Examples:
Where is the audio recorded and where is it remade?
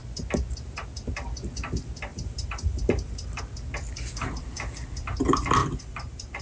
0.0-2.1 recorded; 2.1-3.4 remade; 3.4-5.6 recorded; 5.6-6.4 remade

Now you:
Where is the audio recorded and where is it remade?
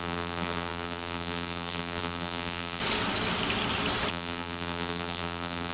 0.0-2.8 remade; 2.8-4.1 recorded; 4.1-5.7 remade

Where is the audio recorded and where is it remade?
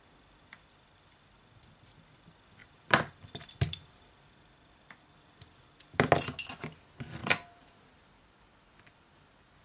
0.0-2.6 recorded; 2.6-5.4 remade; 5.4-7.2 recorded; 7.2-8.6 remade; 8.6-9.6 recorded